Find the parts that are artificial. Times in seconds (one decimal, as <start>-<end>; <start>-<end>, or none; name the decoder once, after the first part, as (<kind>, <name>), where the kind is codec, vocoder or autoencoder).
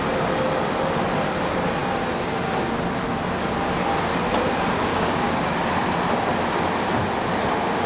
4.9-5.5 (codec, DAC)